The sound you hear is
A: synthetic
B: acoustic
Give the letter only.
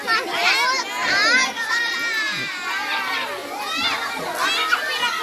B